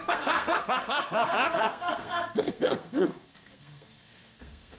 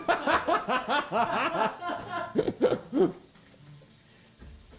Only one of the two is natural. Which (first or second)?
second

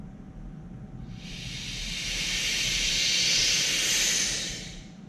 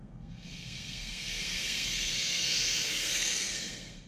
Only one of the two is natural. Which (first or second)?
first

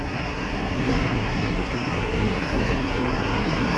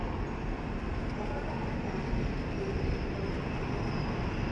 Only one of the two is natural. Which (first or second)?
second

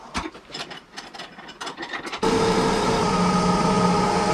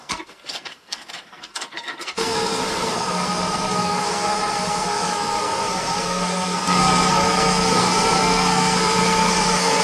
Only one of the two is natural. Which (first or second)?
first